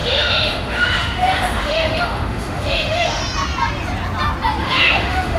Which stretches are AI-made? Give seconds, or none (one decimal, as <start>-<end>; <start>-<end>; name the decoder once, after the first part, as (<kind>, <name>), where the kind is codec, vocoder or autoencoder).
0.0-3.2 (autoencoder, DAC-VAE); 4.6-5.4